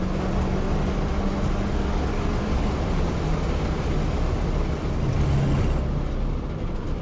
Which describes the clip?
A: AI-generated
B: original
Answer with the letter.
B